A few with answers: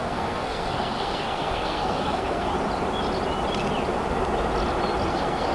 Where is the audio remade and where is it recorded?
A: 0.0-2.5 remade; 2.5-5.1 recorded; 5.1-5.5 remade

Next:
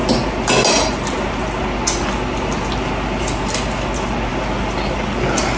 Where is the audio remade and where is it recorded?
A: 0.0-5.6 recorded

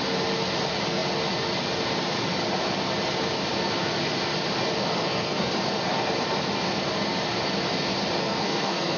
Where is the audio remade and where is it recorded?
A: 0.0-4.9 recorded; 4.9-5.5 remade; 5.5-8.2 recorded; 8.2-9.0 remade

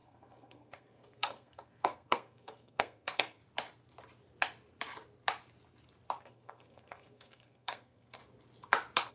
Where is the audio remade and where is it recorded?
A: 0.0-3.4 remade; 3.4-6.2 recorded; 6.2-8.2 remade; 8.2-9.1 recorded

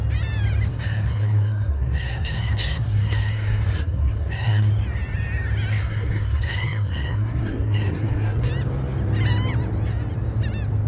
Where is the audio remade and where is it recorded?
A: 0.0-0.7 recorded; 0.7-4.7 remade; 4.7-5.7 recorded; 5.7-8.5 remade; 8.5-10.9 recorded

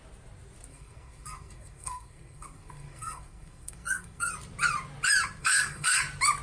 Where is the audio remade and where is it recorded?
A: 0.0-0.7 recorded; 0.7-4.3 remade; 4.3-5.4 recorded; 5.4-6.0 remade; 6.0-6.4 recorded

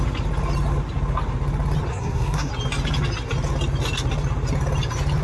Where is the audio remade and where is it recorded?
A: 0.0-1.9 recorded; 1.9-2.5 remade; 2.5-5.2 recorded

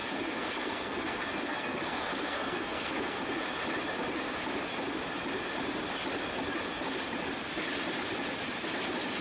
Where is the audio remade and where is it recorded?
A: 0.0-3.2 remade; 3.2-9.2 recorded